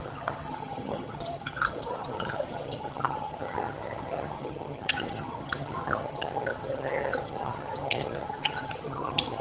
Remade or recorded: remade